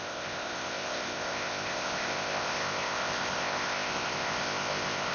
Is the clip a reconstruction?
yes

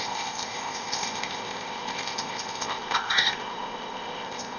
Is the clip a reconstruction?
yes